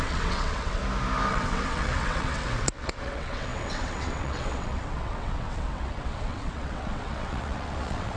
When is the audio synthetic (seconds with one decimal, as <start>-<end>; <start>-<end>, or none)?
0.0-0.8; 1.3-8.2